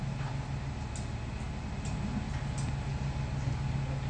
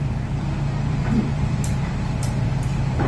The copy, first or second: second